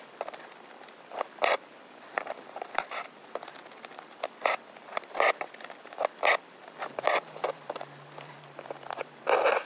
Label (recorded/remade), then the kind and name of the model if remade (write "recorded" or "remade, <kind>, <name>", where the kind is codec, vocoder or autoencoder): remade, vocoder, BigVGAN v2